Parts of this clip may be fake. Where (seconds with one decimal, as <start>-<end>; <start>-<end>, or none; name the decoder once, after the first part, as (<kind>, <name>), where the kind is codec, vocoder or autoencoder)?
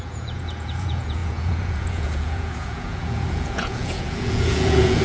0.0-5.0 (vocoder, Vocos)